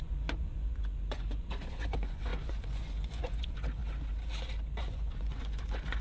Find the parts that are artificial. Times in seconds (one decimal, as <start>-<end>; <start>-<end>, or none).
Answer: 0.0-3.8; 4.8-6.0